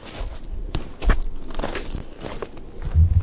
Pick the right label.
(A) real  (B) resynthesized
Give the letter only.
A